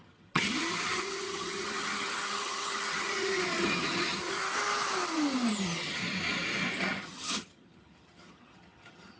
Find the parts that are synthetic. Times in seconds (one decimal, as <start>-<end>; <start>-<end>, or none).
0.0-4.4; 5.5-6.0; 6.7-9.2